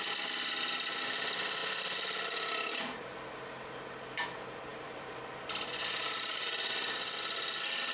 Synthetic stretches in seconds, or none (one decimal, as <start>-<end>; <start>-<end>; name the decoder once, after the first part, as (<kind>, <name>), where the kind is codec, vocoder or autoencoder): 1.6-2.7 (vocoder, BigVGAN v2); 4.7-5.2